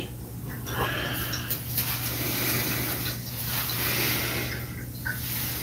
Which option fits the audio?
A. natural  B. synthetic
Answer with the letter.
A